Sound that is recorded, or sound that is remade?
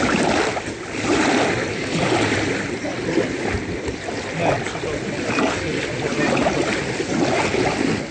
recorded